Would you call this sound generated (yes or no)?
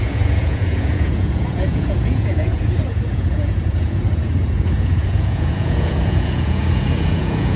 yes